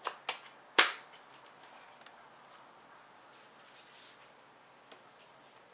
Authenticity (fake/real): real